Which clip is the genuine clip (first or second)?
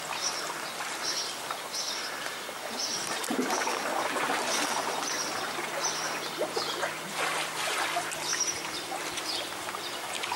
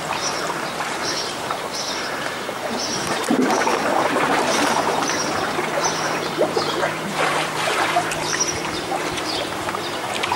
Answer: first